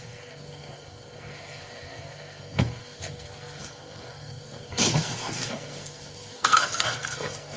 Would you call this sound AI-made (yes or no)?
yes